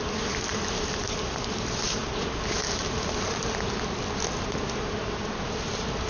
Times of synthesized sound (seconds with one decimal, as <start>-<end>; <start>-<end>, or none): 0.5-1.3